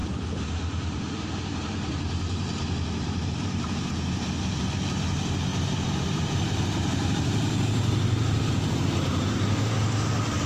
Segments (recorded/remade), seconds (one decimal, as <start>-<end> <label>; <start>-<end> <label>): 0.0-4.6 remade; 4.6-5.5 recorded; 5.5-9.7 remade; 9.7-10.5 recorded